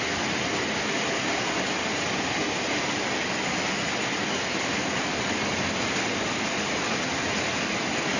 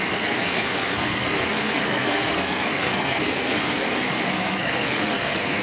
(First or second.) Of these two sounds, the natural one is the first